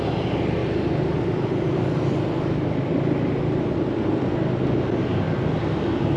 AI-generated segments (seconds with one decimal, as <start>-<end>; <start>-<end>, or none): none